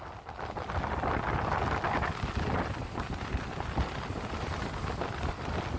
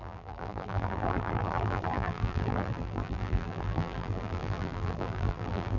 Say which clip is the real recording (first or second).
first